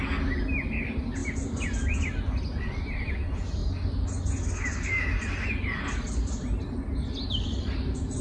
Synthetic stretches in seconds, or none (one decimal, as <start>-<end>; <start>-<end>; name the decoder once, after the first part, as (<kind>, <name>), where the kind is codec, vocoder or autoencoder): none